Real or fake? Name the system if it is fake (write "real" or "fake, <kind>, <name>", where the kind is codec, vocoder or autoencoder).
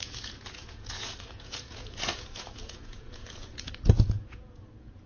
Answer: fake, vocoder, Vocos